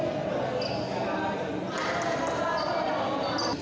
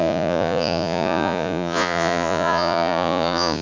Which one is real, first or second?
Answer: first